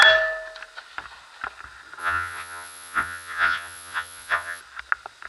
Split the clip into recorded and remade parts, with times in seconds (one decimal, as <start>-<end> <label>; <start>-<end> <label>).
0.0-2.0 recorded; 2.0-4.6 remade; 4.6-5.3 recorded